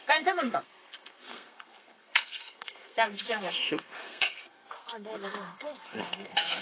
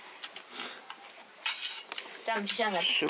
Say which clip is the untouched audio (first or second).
second